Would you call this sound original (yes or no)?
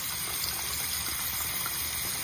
yes